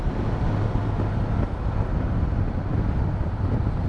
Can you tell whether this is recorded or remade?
recorded